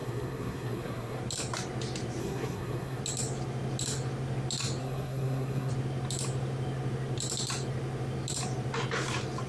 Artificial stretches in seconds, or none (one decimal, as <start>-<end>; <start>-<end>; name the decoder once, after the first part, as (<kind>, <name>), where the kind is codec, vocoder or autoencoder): 0.0-1.2 (codec, SNAC); 2.2-3.0; 4.8-5.7